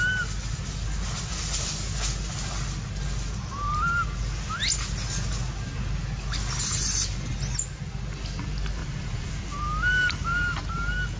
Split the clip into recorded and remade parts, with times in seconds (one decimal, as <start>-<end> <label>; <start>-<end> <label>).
0.0-8.8 recorded; 8.8-9.3 remade; 9.3-11.2 recorded